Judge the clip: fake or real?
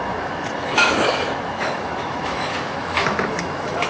fake